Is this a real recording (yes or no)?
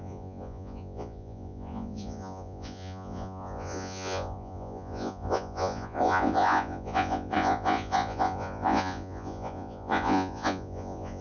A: no